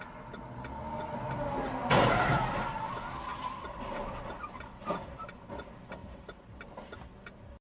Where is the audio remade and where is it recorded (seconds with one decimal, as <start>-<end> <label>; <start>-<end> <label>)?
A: 0.0-6.0 recorded; 6.0-6.7 remade; 6.7-7.6 recorded